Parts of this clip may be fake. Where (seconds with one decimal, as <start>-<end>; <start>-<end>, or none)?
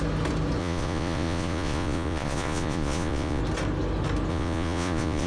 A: 0.6-3.4; 4.3-5.3